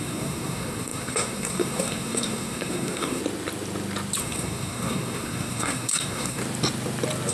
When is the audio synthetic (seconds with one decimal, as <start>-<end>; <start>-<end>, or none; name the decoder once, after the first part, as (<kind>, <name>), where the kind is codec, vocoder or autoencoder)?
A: 0.0-3.2 (codec, SNAC); 4.2-6.4